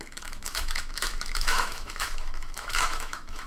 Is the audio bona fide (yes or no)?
no